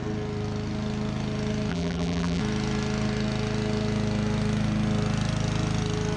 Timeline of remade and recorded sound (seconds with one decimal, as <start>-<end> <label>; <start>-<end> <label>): 0.0-1.7 recorded; 1.7-2.4 remade; 2.4-6.2 recorded